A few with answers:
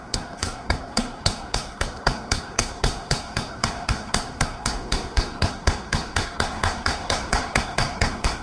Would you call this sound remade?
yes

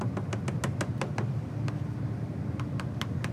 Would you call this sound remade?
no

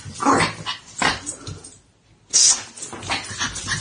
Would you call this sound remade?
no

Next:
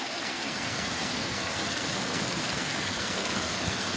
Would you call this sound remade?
yes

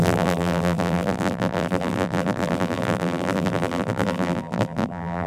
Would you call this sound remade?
yes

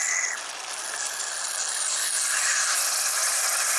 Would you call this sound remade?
no